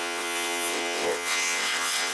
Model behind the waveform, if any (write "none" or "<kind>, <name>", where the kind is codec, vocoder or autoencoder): vocoder, WaveNeXt